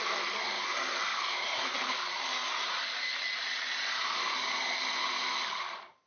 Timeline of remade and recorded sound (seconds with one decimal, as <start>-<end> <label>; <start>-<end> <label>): 0.0-1.1 recorded; 1.1-1.7 remade; 1.7-6.1 recorded